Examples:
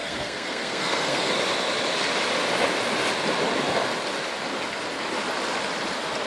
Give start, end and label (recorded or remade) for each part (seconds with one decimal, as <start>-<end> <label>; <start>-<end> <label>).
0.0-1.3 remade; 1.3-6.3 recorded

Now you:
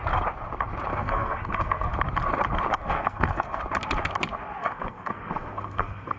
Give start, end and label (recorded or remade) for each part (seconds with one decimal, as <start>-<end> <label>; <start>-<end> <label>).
0.0-0.9 recorded; 0.9-1.9 remade; 1.9-2.7 recorded; 2.7-3.6 remade; 3.6-4.6 recorded; 4.6-6.2 remade

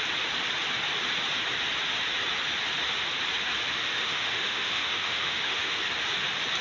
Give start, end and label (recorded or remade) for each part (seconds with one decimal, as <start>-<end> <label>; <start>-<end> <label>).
0.0-3.8 recorded; 3.8-5.8 remade; 5.8-6.6 recorded

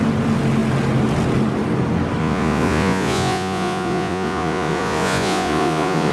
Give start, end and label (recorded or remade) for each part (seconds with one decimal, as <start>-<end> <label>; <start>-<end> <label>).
0.0-2.2 recorded; 2.2-6.1 remade

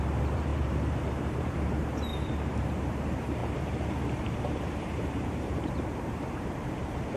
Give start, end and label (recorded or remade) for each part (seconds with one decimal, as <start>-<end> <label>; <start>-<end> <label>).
0.0-7.2 remade